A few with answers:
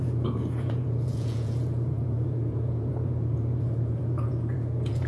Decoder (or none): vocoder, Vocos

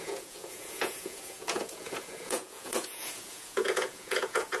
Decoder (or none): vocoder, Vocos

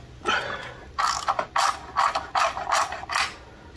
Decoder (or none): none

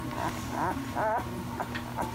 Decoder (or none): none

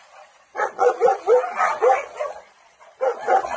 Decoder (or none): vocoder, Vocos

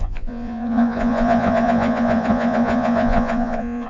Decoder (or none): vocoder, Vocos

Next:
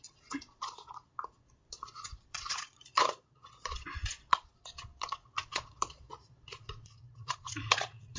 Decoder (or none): vocoder, Vocos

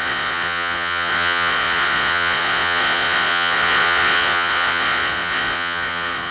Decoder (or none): vocoder, Vocos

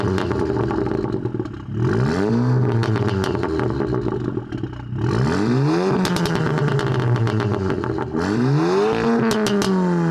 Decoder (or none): none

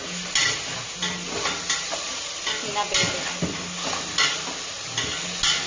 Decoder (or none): none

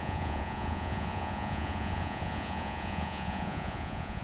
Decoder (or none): vocoder, Vocos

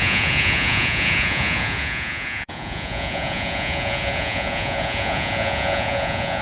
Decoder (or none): vocoder, Vocos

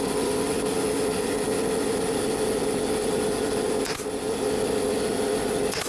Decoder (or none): none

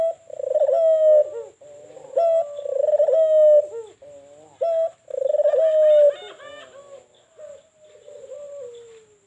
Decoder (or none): none